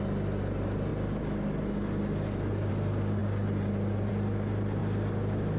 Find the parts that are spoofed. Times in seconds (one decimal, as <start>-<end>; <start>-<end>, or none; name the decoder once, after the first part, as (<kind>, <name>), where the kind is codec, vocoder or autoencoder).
none